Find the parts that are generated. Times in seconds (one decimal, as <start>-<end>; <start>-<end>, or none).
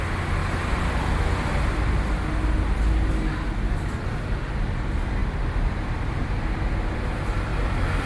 5.2-6.1; 7.5-8.1